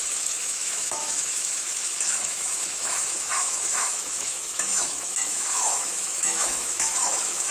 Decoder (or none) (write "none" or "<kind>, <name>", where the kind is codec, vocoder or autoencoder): autoencoder, DAC-VAE